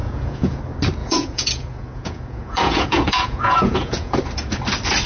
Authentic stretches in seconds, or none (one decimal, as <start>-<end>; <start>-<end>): 0.6-1.0; 4.1-5.1